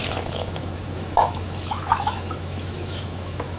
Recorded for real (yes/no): no